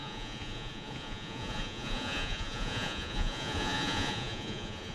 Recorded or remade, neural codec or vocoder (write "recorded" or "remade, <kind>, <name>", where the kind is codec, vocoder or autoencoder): remade, vocoder, Vocos